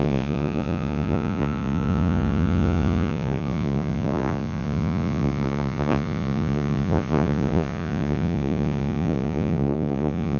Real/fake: fake